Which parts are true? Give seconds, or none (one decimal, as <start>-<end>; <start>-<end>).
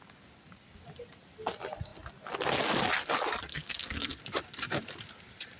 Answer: 0.0-3.5; 4.2-5.6